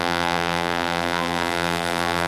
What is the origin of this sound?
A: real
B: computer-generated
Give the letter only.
B